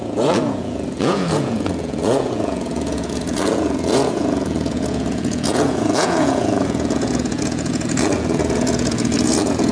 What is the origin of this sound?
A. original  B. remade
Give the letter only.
B